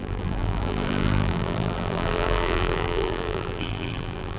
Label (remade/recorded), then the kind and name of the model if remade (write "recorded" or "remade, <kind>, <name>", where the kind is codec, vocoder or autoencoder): remade, vocoder, BigVGAN v2